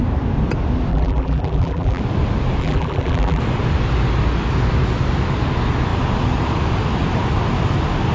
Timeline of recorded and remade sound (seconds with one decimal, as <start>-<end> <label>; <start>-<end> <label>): 0.0-0.9 recorded; 0.9-2.0 remade; 2.0-2.6 recorded; 2.6-3.4 remade; 3.4-8.1 recorded